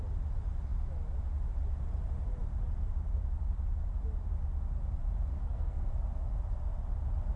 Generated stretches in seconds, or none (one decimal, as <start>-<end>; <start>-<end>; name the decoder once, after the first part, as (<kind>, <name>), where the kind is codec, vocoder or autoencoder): 5.3-5.9 (codec, SNAC)